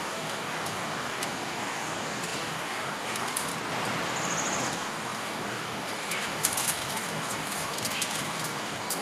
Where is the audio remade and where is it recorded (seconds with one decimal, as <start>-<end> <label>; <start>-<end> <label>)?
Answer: 0.0-3.5 remade; 3.5-4.6 recorded; 4.6-9.0 remade